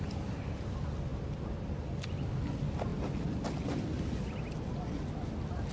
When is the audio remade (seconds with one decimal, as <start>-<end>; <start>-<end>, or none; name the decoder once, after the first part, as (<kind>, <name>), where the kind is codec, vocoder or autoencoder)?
none